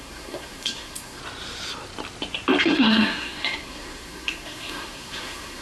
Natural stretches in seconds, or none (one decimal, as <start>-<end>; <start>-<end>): 1.2-2.6

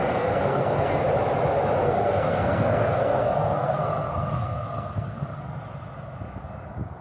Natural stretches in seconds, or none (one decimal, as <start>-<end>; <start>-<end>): 1.0-1.8; 5.5-7.0

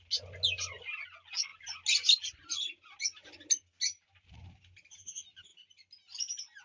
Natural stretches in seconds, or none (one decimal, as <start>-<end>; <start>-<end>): 0.0-6.6

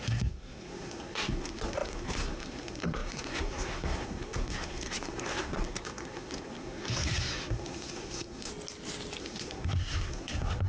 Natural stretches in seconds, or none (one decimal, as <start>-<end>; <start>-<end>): 8.5-9.2

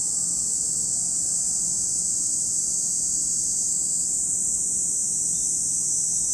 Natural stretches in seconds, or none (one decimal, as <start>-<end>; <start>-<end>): 0.0-6.3

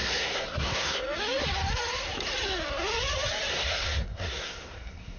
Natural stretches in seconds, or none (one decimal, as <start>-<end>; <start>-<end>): 1.0-3.5

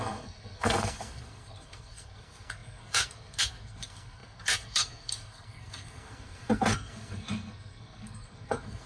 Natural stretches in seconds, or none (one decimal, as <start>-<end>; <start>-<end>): none

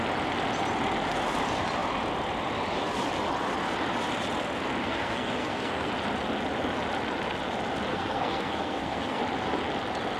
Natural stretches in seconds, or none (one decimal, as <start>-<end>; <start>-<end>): 0.0-4.8; 5.9-7.9; 9.2-10.2